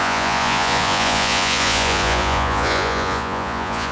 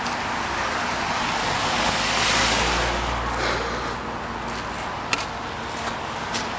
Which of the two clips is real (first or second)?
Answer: second